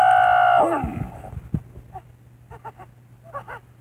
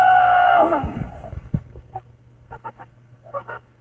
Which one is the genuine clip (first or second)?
first